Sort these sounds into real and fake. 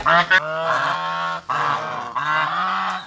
real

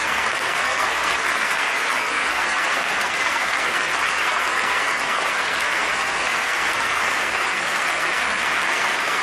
fake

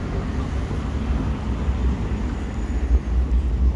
real